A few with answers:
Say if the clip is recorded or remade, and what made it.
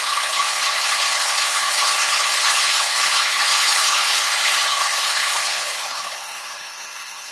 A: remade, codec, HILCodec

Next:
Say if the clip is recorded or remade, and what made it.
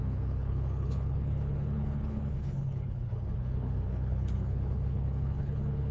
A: remade, codec, HILCodec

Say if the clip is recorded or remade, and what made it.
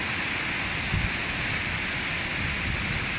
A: recorded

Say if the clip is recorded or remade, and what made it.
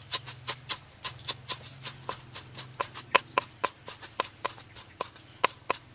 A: remade, vocoder, BigVGAN v2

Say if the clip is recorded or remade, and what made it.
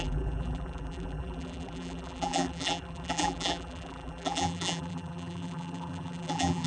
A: remade, vocoder, BigVGAN v2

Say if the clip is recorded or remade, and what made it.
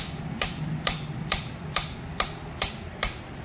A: recorded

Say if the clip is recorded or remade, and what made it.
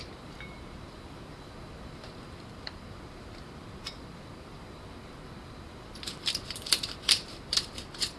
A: remade, vocoder, BigVGAN v2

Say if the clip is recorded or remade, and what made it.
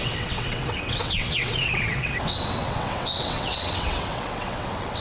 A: remade, vocoder, WaveNeXt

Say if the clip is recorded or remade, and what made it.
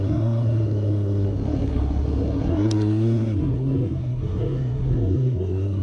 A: remade, codec, SNAC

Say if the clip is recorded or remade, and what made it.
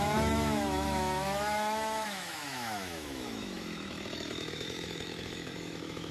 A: remade, autoencoder, DAC-VAE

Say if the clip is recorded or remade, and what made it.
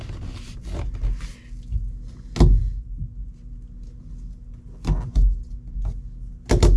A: recorded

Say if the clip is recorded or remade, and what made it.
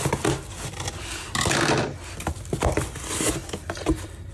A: recorded